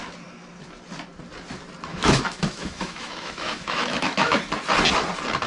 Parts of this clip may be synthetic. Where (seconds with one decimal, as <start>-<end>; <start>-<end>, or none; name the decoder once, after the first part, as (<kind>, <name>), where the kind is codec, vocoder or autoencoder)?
1.9-4.4 (autoencoder, DAC-VAE)